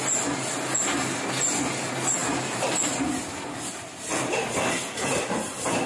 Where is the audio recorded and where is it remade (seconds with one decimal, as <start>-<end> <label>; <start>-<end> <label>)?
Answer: 0.0-5.9 recorded